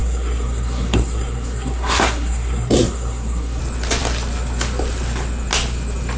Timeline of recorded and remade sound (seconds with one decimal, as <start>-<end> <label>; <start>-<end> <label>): 0.0-3.6 remade; 3.6-6.2 recorded